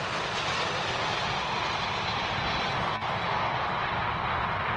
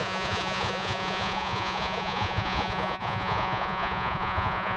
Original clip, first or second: first